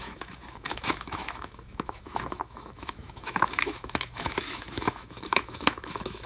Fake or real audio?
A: fake